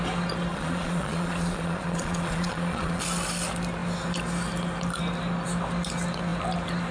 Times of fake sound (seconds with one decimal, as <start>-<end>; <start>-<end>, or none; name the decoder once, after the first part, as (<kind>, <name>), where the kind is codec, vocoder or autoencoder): 0.5-3.0 (vocoder, Vocos)